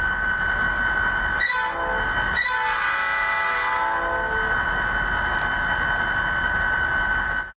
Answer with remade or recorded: recorded